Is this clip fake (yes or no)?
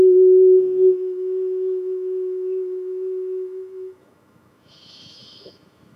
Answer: yes